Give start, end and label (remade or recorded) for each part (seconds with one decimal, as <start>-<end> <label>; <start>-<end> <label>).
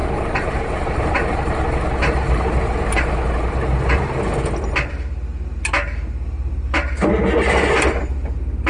0.0-3.1 remade; 3.1-8.7 recorded